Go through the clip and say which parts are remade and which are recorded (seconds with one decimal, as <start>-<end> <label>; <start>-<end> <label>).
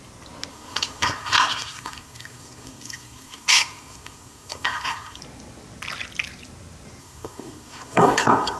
0.0-0.5 recorded; 0.5-5.2 remade; 5.2-7.0 recorded; 7.0-8.6 remade